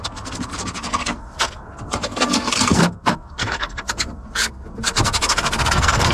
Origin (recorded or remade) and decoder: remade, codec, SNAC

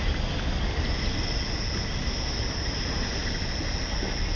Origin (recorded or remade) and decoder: recorded